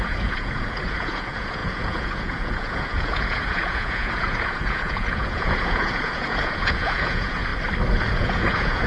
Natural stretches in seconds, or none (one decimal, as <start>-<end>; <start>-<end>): 7.5-8.1